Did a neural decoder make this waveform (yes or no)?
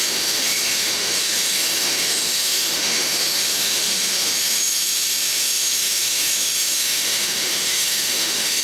yes